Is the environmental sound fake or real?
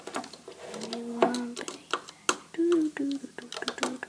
real